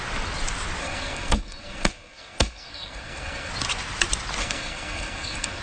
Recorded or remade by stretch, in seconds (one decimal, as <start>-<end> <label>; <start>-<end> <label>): 0.0-0.8 recorded; 0.8-3.5 remade; 3.5-4.4 recorded; 4.4-5.6 remade

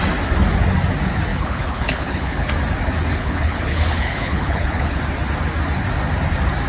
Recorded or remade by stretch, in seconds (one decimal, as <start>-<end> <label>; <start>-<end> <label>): 0.0-1.3 recorded; 1.3-2.5 remade; 2.5-3.1 recorded; 3.1-5.0 remade; 5.0-6.7 recorded

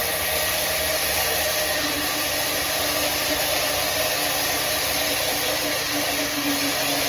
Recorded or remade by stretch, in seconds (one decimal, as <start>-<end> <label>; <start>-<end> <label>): 0.0-7.1 remade

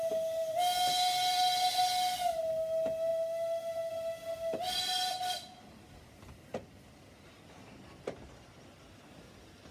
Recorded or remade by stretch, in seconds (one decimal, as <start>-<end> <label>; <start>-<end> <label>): 0.0-9.7 recorded

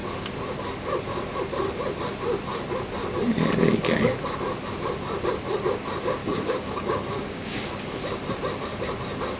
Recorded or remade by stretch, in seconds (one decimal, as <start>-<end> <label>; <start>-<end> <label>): 0.0-6.2 recorded; 6.2-7.7 remade; 7.7-9.4 recorded

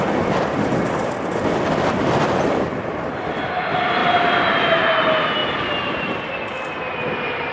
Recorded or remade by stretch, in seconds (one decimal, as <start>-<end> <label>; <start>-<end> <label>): 0.0-3.1 remade; 3.1-4.0 recorded; 4.0-4.6 remade; 4.6-5.4 recorded; 5.4-6.3 remade; 6.3-7.5 recorded